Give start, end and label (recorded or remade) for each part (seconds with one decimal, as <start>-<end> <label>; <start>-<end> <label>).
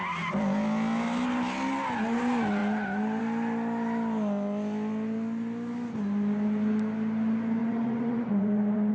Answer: 0.0-7.6 recorded; 7.6-8.9 remade